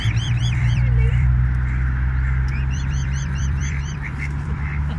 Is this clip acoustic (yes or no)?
no